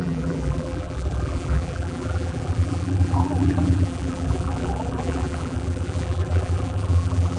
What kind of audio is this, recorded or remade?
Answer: remade